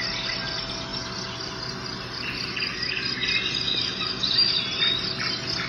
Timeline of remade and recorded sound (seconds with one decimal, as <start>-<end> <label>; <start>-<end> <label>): 0.0-5.7 recorded